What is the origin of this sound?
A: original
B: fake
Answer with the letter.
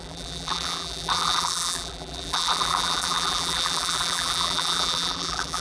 B